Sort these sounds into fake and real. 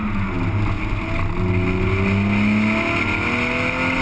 real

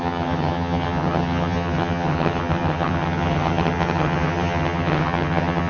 fake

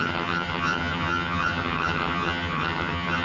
fake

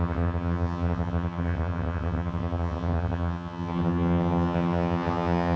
fake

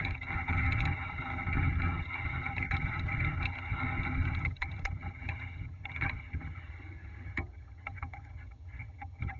fake